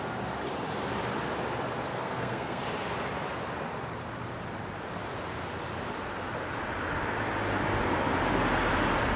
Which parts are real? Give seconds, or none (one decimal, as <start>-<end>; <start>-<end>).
0.0-1.9; 2.6-9.2